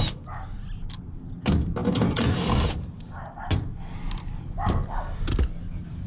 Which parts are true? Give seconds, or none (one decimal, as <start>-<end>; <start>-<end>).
0.0-6.1